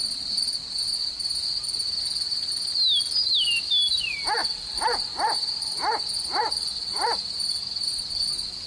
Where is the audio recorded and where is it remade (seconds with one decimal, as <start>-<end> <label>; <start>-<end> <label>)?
0.0-1.0 recorded; 1.0-2.0 remade; 2.0-4.4 recorded; 4.4-8.1 remade; 8.1-8.7 recorded